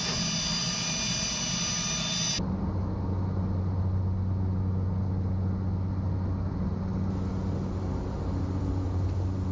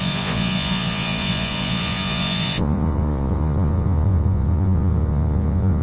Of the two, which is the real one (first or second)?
first